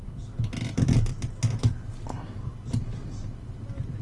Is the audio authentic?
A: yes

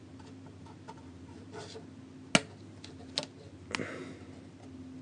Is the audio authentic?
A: yes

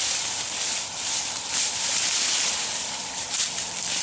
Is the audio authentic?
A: yes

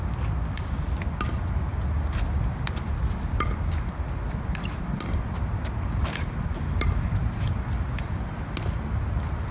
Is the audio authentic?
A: yes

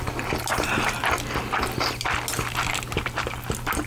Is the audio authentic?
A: yes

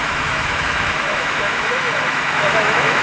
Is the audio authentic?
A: no